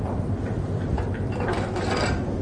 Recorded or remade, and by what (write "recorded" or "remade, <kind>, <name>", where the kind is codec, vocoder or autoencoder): recorded